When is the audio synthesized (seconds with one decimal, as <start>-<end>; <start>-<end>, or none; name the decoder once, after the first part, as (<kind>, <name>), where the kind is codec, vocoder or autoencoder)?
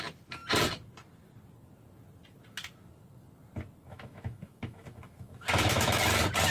3.9-6.0 (autoencoder, DAC-VAE)